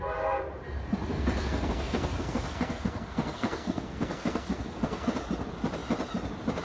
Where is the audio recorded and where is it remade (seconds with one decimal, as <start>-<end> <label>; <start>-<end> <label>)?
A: 0.0-1.1 recorded; 1.1-5.1 remade; 5.1-6.6 recorded